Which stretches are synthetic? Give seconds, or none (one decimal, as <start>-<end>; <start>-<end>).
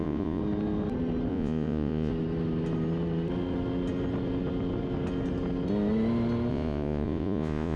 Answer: 0.0-0.4; 1.3-2.1; 6.5-7.8